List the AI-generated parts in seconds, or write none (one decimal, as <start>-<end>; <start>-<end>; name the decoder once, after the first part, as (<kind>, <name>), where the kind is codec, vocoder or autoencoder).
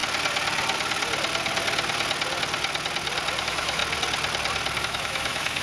3.4-3.8 (autoencoder, DAC-VAE); 4.8-5.6